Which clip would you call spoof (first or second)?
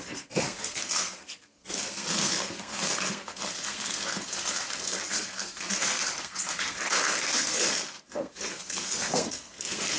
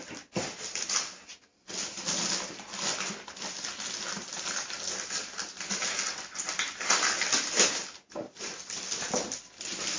first